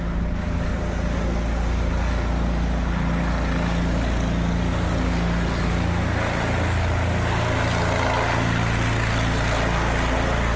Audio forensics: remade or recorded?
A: recorded